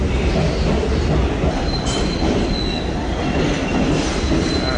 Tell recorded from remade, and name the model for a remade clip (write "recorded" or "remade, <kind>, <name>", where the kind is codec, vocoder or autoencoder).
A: recorded